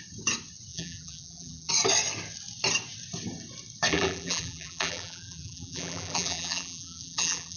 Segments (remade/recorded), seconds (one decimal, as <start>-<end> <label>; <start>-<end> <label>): 0.0-0.7 recorded; 0.7-1.7 remade; 1.7-3.9 recorded; 3.9-7.6 remade